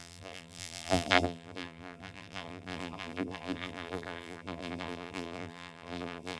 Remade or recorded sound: remade